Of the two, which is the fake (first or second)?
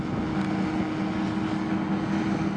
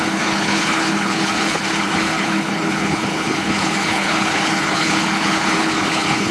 second